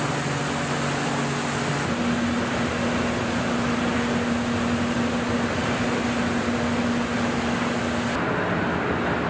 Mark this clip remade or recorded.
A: recorded